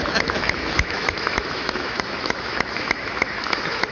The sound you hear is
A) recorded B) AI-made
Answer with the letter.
B